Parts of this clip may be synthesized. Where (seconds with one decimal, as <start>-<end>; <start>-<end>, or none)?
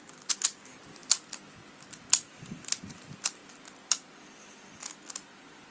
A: none